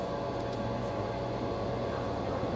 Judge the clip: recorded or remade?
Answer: remade